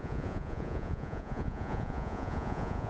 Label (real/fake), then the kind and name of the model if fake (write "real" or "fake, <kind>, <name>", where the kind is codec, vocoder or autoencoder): fake, vocoder, Vocos